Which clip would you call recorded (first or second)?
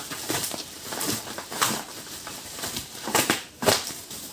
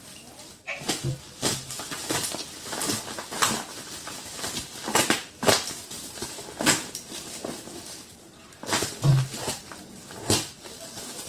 second